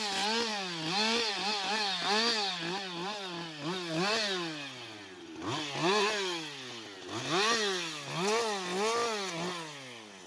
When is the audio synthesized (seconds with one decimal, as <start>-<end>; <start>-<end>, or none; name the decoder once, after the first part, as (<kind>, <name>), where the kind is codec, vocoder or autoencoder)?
none